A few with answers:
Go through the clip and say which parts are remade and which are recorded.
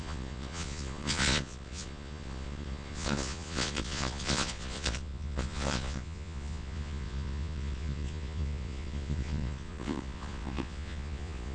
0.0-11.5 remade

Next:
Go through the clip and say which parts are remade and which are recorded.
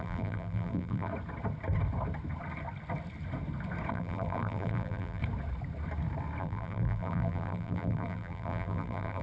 0.0-1.1 remade; 1.1-3.9 recorded; 3.9-5.2 remade; 5.2-6.4 recorded; 6.4-9.2 remade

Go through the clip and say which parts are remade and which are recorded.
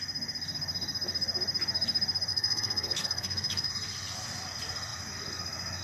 0.0-2.3 recorded; 2.3-3.7 remade; 3.7-5.8 recorded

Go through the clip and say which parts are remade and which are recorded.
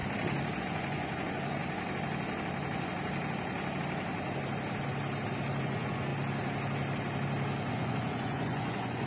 0.0-0.6 recorded; 0.6-1.6 remade; 1.6-5.6 recorded; 5.6-6.1 remade; 6.1-7.7 recorded; 7.7-9.1 remade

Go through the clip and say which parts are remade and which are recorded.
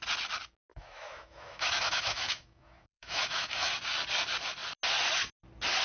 0.0-0.7 recorded; 0.7-3.7 remade; 3.7-5.8 recorded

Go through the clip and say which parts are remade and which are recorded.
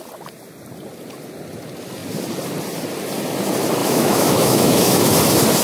0.0-3.8 recorded; 3.8-5.1 remade; 5.1-5.6 recorded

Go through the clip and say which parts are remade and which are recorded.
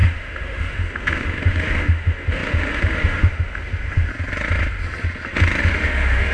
0.0-4.1 remade; 4.1-5.6 recorded; 5.6-6.3 remade